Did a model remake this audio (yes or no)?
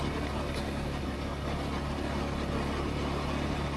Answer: no